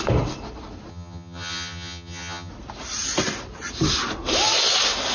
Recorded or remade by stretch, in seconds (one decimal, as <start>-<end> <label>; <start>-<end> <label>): 0.0-0.9 recorded; 0.9-2.5 remade; 2.5-5.1 recorded